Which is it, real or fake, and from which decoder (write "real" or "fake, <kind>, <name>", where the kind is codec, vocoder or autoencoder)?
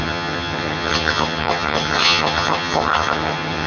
fake, vocoder, HiFi-GAN